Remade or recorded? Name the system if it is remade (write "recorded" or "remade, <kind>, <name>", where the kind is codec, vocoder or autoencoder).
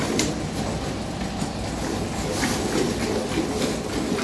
recorded